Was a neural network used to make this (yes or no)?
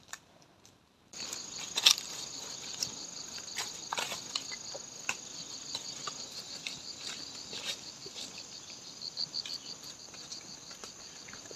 yes